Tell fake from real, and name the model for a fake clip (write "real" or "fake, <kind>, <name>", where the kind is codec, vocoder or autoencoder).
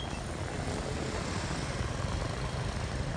real